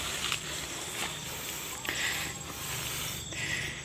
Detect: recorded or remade recorded